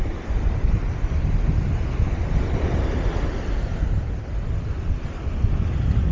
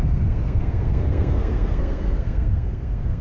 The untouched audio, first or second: first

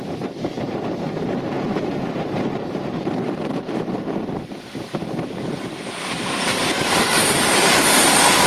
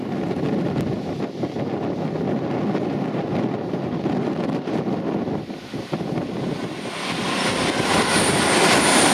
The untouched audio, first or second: second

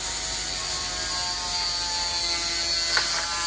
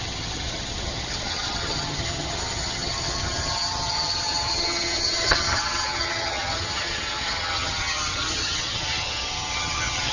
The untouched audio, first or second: first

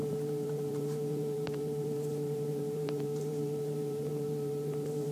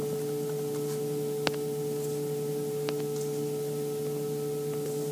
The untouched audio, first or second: second